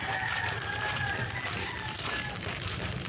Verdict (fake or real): real